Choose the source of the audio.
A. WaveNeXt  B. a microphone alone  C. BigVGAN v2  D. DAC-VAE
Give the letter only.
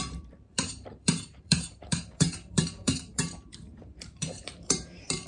C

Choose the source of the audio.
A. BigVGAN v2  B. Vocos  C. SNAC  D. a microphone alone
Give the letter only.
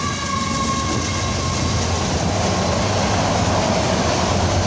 D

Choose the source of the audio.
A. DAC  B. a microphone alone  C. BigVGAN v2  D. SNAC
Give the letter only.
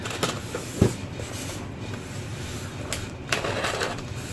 B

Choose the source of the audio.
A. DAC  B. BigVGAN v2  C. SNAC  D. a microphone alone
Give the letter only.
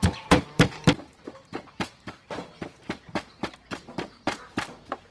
B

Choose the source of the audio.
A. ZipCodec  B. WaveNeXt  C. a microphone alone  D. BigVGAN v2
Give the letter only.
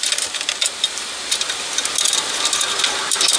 C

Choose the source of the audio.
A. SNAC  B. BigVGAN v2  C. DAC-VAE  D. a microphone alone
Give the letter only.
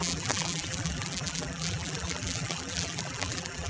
B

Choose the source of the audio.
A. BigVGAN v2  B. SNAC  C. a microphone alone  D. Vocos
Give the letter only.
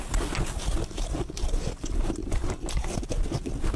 C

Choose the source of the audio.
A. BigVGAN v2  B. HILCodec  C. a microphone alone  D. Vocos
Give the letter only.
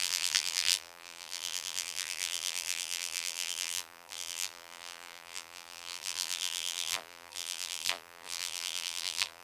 A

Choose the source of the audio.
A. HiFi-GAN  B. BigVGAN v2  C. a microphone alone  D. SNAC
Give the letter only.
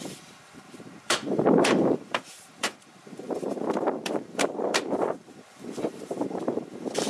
B